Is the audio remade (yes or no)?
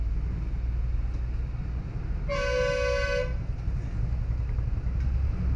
no